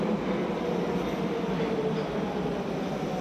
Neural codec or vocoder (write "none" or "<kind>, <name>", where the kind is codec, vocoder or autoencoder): none